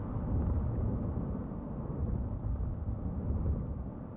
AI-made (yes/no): no